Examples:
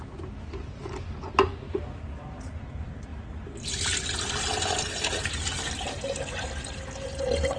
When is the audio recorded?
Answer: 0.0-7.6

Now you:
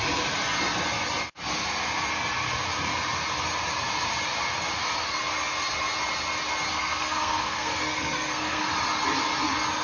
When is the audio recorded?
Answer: 0.0-6.7; 8.6-9.8

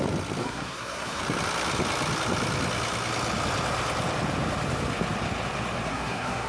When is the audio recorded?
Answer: 0.0-0.4; 1.2-5.9

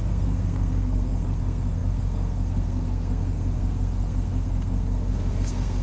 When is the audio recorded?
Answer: none

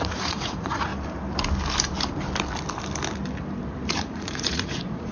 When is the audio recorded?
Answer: 0.9-3.9

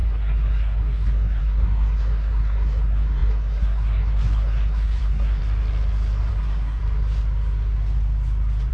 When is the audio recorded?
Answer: 5.4-6.3; 6.8-8.7

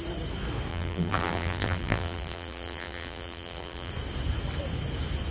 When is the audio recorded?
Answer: 0.0-0.7; 3.9-5.3